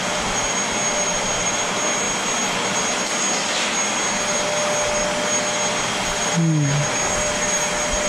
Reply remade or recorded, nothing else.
recorded